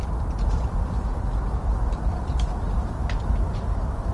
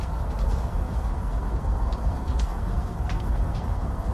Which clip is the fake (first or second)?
second